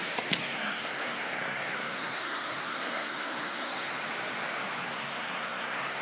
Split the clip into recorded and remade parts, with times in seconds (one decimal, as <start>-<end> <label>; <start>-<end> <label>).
0.0-0.4 recorded; 0.4-4.0 remade; 4.0-4.8 recorded; 4.8-6.0 remade